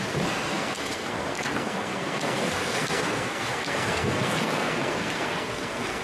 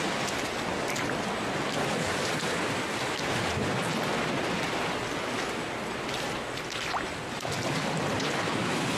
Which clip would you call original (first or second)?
second